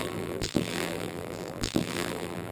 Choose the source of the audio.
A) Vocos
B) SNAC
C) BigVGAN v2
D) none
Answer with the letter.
C